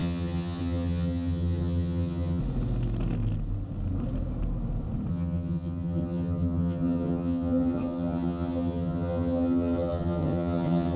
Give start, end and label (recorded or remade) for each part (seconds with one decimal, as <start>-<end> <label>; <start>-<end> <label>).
0.0-2.4 remade; 2.4-5.1 recorded; 5.1-11.0 remade